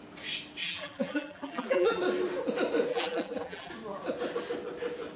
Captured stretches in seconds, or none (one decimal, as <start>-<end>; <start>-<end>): 0.0-0.6; 2.0-2.9; 3.7-5.2